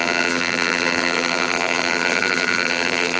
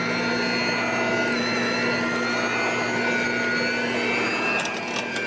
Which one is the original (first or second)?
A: second